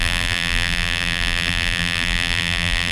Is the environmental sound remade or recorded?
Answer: remade